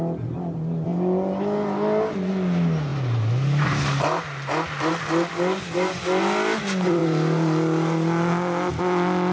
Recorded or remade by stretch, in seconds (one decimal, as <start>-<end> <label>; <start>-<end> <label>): 0.0-9.3 recorded